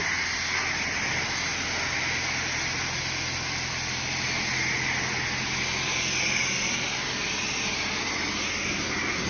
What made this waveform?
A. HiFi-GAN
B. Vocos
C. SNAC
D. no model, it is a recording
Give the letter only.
D